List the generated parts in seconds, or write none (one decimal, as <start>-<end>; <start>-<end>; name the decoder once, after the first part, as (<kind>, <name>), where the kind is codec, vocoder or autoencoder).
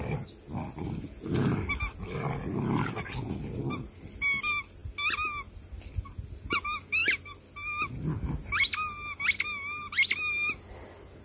none